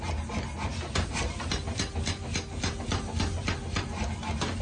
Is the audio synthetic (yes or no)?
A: no